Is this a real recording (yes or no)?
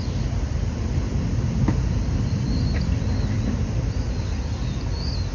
yes